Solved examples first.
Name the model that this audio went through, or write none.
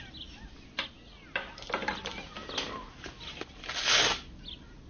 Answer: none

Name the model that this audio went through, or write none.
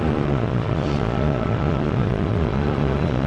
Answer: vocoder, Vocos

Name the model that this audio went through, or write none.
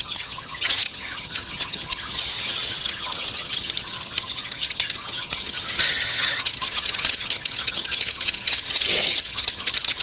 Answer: vocoder, HiFi-GAN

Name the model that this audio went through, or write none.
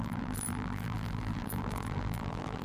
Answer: vocoder, BigVGAN v2